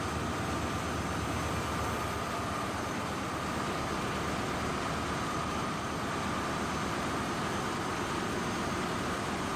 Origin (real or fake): real